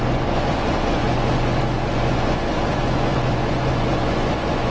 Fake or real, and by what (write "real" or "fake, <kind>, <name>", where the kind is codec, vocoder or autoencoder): fake, vocoder, Vocos